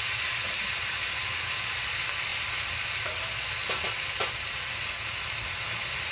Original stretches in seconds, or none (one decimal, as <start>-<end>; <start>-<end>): 0.0-6.1